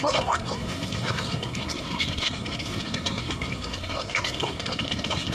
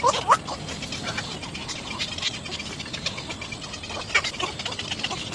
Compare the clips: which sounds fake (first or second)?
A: first